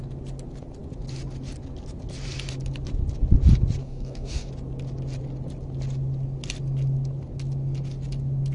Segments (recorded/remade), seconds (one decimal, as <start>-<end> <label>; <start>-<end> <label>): 0.0-3.8 recorded; 3.8-4.5 remade; 4.5-8.5 recorded